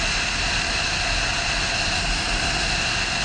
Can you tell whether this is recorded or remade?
recorded